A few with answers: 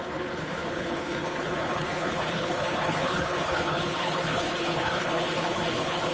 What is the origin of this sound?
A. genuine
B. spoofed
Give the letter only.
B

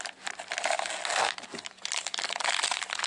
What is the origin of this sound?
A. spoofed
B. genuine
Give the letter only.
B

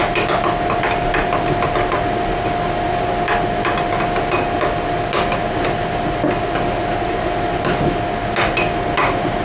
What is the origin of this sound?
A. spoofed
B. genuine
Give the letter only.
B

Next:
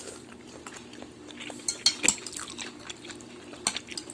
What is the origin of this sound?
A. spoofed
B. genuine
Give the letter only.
B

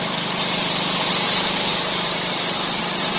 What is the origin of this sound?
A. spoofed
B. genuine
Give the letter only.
A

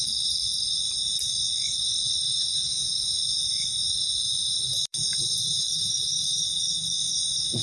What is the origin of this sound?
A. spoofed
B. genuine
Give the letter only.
A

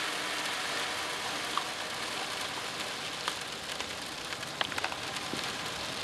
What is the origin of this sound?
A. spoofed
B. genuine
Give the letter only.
B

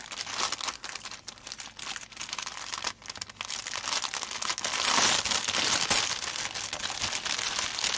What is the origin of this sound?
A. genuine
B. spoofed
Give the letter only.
A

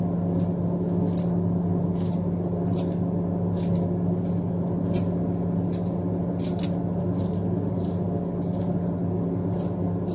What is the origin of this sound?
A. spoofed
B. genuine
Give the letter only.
B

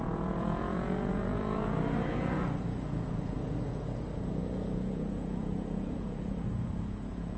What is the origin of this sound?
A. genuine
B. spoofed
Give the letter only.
B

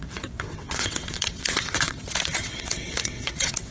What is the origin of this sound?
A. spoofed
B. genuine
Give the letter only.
A